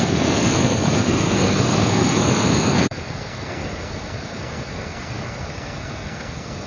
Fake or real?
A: fake